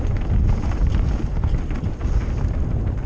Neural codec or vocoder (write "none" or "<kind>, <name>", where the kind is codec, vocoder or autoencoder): none